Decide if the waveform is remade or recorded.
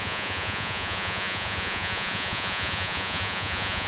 remade